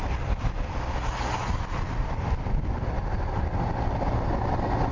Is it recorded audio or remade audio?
recorded